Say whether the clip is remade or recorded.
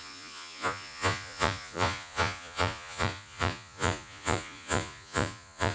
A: remade